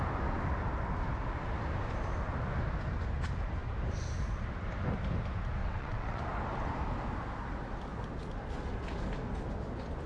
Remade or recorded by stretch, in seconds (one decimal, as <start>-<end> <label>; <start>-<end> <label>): 0.0-5.6 recorded; 5.6-6.2 remade; 6.2-10.1 recorded